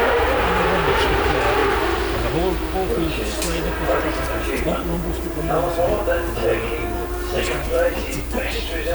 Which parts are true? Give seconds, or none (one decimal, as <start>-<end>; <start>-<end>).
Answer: 1.6-4.0; 6.5-7.3